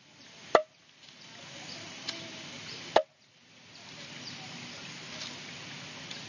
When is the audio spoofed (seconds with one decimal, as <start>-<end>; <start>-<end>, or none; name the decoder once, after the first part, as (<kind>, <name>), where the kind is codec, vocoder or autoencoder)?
none